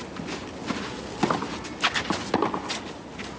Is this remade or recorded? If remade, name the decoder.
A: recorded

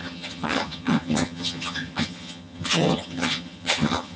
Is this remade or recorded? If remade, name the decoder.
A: remade, vocoder, HiFi-GAN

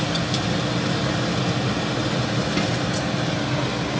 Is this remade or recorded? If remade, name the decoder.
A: recorded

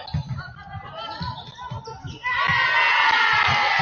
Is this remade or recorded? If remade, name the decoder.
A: recorded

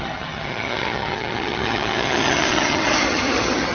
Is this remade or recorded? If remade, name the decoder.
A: remade, vocoder, HiFi-GAN